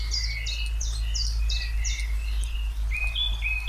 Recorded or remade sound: recorded